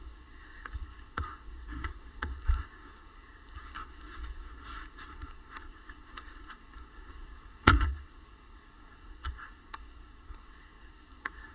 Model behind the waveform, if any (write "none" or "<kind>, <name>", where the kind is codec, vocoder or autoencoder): codec, SNAC